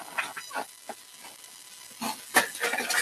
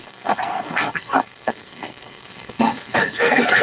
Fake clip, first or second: second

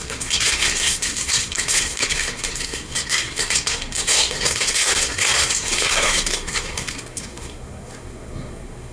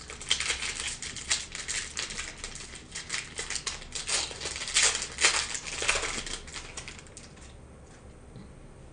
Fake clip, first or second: first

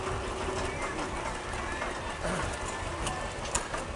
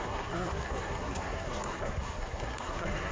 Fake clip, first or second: second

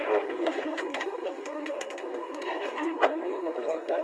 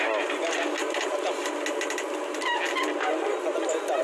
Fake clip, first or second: first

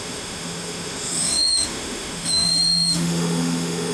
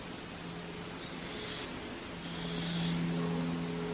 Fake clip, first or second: first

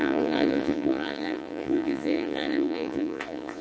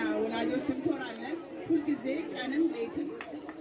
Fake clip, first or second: first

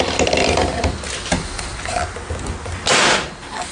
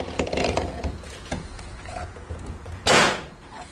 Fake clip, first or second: second